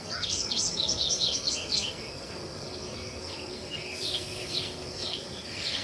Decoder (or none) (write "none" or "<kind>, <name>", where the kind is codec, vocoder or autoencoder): codec, SNAC